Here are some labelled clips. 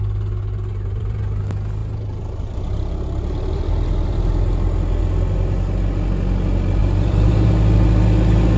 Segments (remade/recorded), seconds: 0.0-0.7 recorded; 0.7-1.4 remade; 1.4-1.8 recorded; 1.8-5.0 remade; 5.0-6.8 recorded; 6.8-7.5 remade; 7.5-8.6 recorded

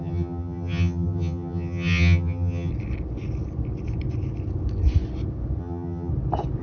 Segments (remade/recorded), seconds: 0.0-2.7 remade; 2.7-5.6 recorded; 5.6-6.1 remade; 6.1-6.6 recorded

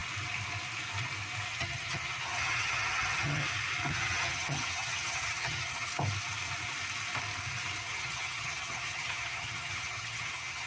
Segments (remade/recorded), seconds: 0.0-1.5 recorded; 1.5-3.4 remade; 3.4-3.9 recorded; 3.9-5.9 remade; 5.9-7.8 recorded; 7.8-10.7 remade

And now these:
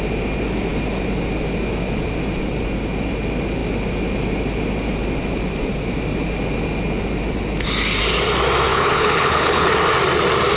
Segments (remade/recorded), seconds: 0.0-8.7 recorded; 8.7-9.7 remade; 9.7-10.6 recorded

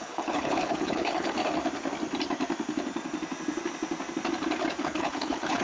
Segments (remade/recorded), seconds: 0.0-1.4 remade; 1.4-4.8 recorded; 4.8-5.6 remade

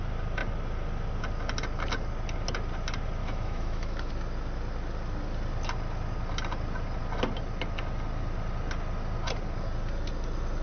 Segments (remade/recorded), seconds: 0.0-3.2 recorded; 3.2-4.1 remade; 4.1-10.6 recorded